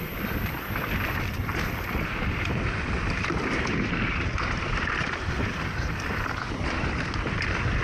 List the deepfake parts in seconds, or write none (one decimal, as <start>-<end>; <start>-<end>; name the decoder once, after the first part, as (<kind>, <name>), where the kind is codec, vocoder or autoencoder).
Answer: 0.0-1.5 (vocoder, BigVGAN v2); 2.1-7.8